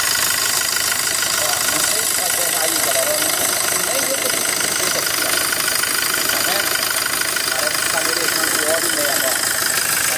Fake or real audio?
real